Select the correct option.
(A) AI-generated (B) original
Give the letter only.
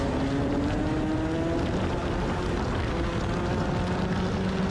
B